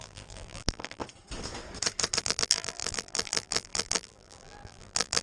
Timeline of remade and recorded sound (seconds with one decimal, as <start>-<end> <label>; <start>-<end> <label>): 0.0-1.0 remade; 1.0-2.2 recorded; 2.2-5.2 remade